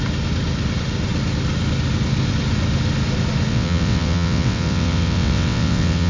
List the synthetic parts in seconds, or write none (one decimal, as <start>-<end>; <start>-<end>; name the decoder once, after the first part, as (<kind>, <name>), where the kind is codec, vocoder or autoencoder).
3.5-6.1 (vocoder, WaveNeXt)